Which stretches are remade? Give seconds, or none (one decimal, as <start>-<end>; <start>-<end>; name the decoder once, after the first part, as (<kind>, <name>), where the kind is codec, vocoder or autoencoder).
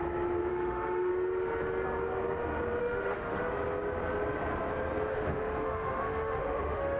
0.5-1.1 (autoencoder, DAC-VAE); 2.8-3.5; 5.1-7.0